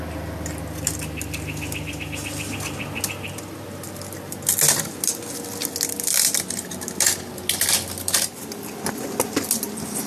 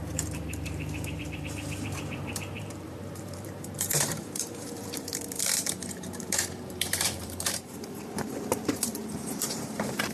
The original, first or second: first